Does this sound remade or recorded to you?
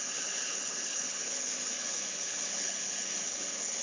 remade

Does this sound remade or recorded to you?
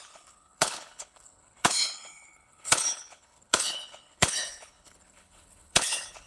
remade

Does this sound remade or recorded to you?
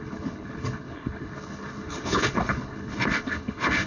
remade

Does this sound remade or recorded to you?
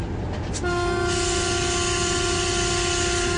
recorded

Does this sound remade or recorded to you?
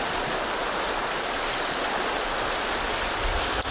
recorded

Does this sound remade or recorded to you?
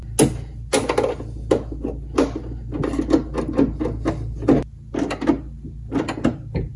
recorded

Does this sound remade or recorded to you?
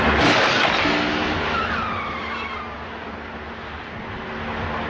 recorded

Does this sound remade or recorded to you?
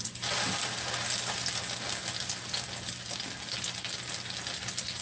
recorded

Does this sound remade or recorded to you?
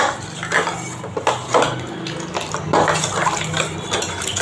recorded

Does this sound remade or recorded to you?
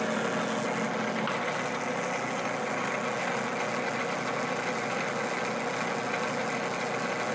recorded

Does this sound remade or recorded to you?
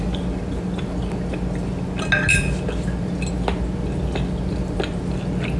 recorded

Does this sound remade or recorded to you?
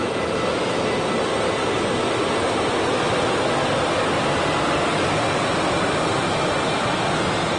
recorded